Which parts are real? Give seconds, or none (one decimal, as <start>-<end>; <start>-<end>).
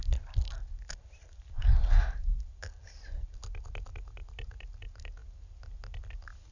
0.0-6.5